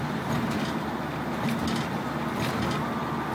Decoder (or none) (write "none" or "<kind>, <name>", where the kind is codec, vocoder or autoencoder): none